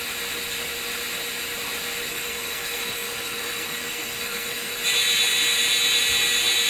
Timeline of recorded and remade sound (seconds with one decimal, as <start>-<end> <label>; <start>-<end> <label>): 0.0-2.1 recorded; 2.1-4.8 remade; 4.8-6.7 recorded